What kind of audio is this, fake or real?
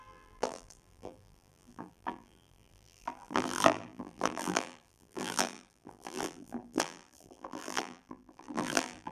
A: fake